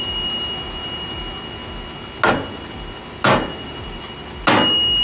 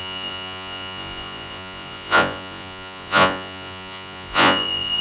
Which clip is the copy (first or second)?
second